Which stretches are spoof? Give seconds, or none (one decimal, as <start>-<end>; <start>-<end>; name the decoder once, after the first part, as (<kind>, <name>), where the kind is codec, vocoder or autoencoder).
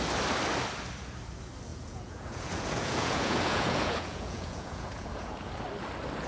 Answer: 1.7-5.5 (vocoder, Vocos)